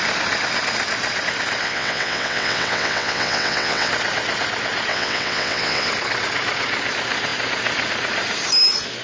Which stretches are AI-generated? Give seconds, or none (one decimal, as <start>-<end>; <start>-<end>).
1.6-3.9; 4.9-5.9